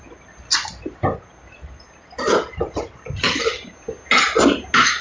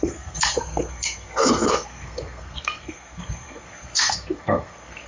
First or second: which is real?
first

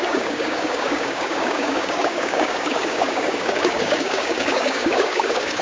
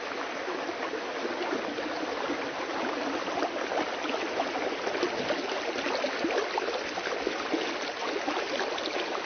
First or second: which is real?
second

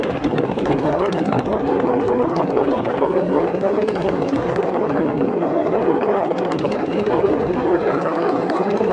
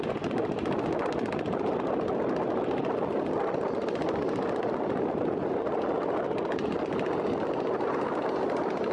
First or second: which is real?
second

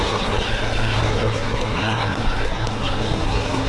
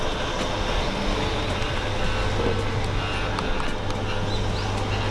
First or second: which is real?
second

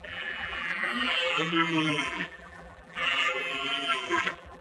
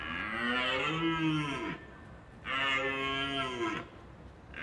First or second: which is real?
second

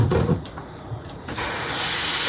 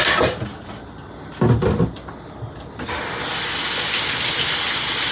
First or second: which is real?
second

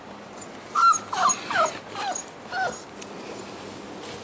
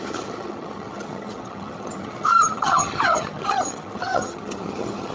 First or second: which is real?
first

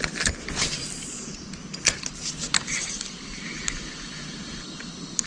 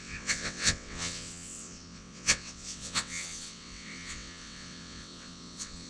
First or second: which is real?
first